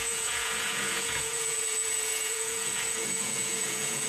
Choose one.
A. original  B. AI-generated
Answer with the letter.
B